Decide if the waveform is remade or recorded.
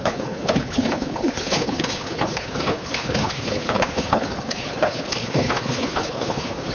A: remade